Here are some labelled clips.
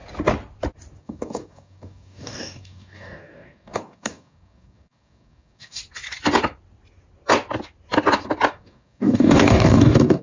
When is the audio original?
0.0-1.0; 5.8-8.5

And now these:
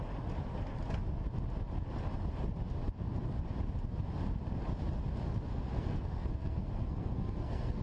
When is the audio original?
0.0-5.5

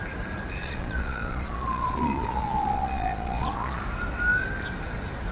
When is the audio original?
0.0-0.6; 3.8-5.3

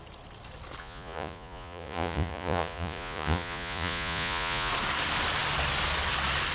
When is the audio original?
0.0-0.8; 4.7-6.5

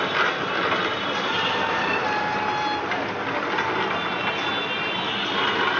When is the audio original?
0.0-5.8